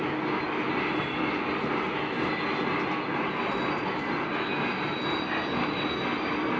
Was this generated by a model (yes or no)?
no